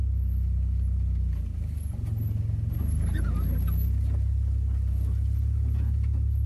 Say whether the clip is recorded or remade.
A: recorded